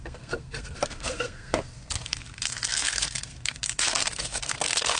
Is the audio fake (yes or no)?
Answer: yes